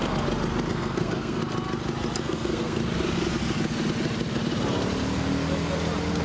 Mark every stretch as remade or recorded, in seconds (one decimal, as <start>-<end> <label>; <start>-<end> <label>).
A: 0.0-0.7 recorded; 0.7-1.4 remade; 1.4-2.2 recorded; 2.2-2.8 remade; 2.8-6.2 recorded